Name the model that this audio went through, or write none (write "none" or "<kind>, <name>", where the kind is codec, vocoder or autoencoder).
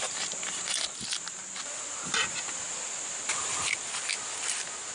none